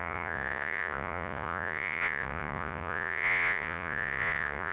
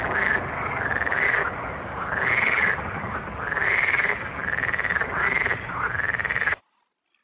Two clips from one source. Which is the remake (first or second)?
first